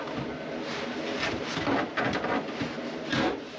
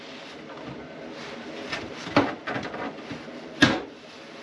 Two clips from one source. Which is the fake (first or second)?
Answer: second